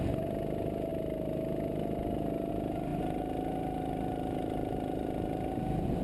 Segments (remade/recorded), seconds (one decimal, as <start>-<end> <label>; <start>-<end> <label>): 0.0-6.0 recorded